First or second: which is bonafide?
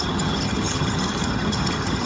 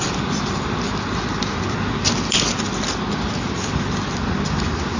second